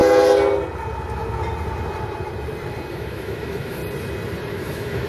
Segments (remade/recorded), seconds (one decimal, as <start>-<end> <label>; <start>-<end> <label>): 0.0-2.9 recorded; 2.9-3.8 remade; 3.8-4.5 recorded; 4.5-5.1 remade